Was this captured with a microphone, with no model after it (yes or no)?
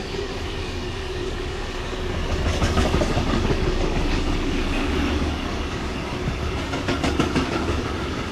no